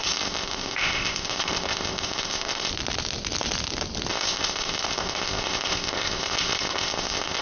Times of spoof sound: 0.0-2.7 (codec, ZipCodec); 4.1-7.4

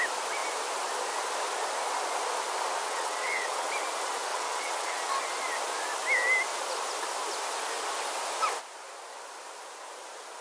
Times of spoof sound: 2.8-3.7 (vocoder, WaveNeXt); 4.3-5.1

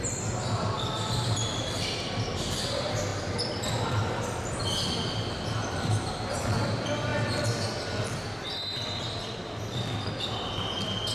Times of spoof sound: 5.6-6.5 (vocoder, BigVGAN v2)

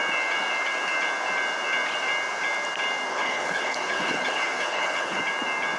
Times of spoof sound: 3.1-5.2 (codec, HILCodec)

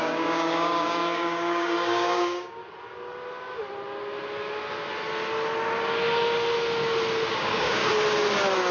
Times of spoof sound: 0.0-2.6 (codec, DAC); 7.3-7.8

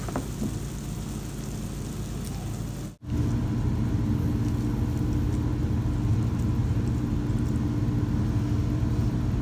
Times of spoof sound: 6.6-7.1 (vocoder, BigVGAN v2)

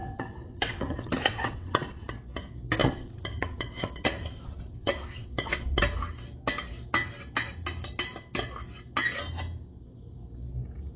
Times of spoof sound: 0.0-2.1 (vocoder, WaveNeXt); 2.8-5.8